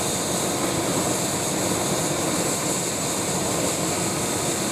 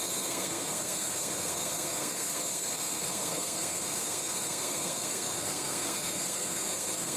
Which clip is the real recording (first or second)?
first